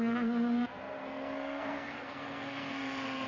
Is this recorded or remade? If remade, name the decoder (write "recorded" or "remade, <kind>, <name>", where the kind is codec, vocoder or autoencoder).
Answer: remade, codec, SNAC